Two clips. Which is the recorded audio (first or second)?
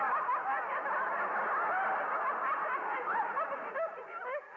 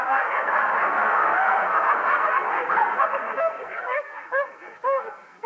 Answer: first